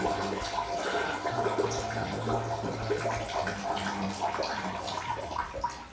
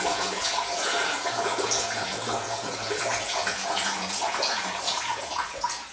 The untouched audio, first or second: first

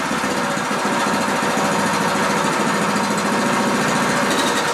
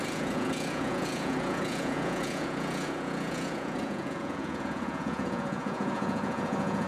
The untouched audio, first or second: first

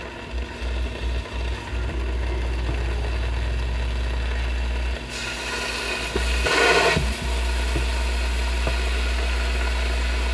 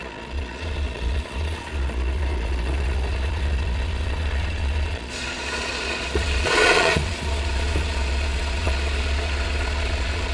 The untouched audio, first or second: first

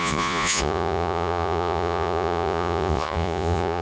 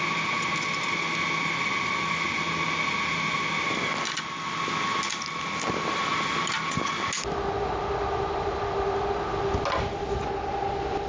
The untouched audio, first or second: second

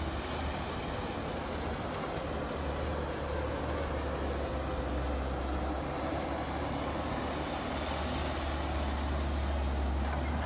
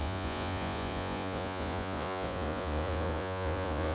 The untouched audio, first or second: first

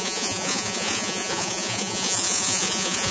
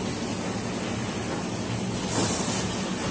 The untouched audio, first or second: second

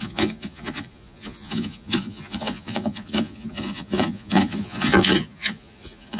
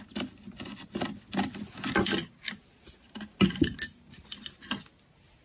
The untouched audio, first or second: second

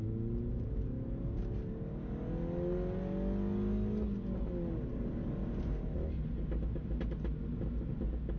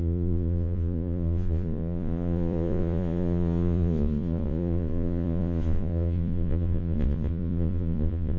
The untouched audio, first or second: first